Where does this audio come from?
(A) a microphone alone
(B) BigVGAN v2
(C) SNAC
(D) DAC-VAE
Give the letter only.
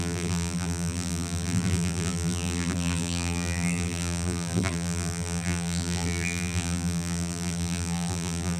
B